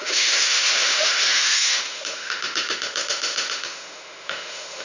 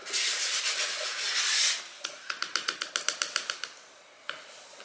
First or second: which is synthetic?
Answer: first